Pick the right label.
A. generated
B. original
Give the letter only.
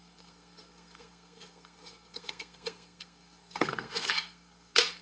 A